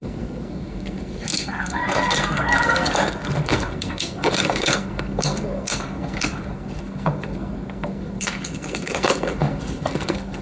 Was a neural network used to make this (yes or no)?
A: yes